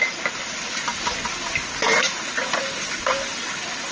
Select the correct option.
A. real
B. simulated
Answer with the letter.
A